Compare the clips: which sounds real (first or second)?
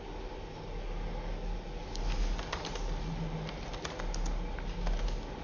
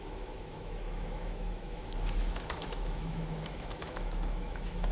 first